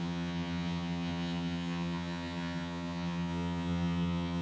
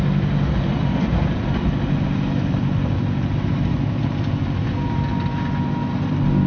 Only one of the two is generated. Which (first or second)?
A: first